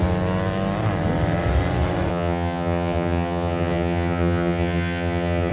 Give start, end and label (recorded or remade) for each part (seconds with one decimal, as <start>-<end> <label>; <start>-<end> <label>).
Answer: 0.0-2.1 recorded; 2.1-5.5 remade